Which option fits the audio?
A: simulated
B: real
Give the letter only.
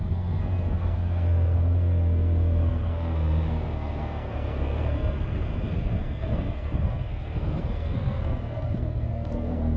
A